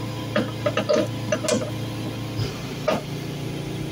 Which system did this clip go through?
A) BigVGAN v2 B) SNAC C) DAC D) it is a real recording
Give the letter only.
D